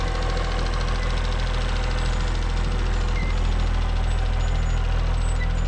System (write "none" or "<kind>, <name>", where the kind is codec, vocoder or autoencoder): none